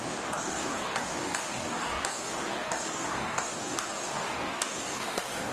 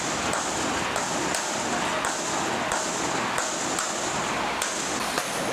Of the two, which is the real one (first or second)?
second